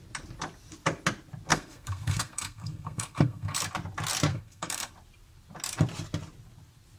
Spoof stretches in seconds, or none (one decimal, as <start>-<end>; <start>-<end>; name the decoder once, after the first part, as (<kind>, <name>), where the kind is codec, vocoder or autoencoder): 1.5-3.6 (codec, SNAC); 4.3-4.9